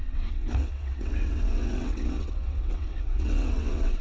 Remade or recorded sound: remade